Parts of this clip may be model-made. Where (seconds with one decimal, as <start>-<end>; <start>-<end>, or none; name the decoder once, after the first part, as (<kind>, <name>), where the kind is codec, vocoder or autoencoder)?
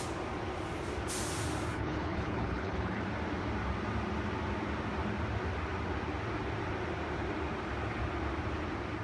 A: 1.7-3.0 (codec, HILCodec)